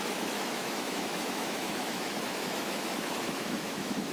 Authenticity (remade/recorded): remade